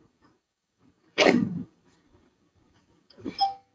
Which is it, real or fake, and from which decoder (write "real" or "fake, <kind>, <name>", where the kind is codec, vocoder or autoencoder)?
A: fake, codec, DAC